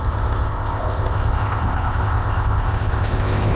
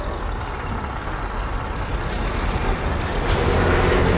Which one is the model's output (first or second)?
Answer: first